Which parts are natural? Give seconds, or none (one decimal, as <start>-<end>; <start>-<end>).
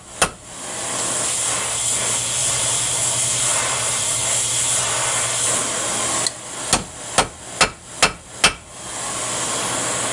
0.0-2.4; 3.0-3.5; 4.2-10.1